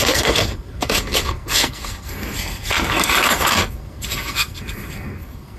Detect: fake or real fake